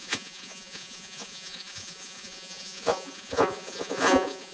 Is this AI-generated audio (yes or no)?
yes